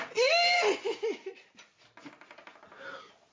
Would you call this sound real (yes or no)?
yes